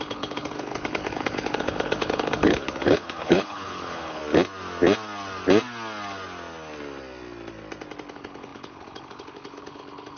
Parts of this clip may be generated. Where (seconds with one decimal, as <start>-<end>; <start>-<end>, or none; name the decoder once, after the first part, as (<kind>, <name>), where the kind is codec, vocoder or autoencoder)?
0.0-4.2 (codec, HILCodec); 8.1-10.2